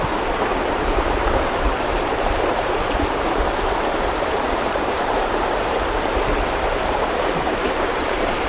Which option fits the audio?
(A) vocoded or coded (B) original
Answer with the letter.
A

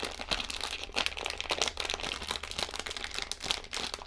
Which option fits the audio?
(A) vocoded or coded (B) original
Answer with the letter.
B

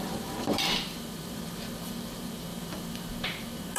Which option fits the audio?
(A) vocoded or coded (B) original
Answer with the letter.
A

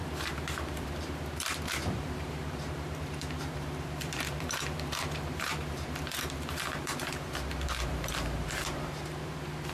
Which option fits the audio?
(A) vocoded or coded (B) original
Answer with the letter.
A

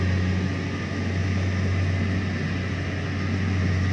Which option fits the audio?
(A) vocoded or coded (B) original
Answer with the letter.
B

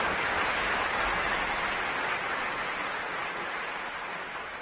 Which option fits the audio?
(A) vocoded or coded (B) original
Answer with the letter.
B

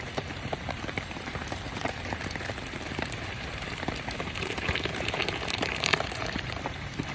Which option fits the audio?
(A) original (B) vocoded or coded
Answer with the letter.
B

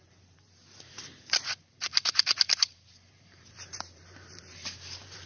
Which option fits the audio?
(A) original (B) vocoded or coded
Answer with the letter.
B